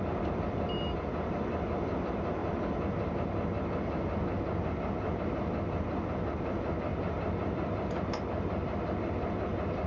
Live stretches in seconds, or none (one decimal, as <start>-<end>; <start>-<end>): 0.0-9.9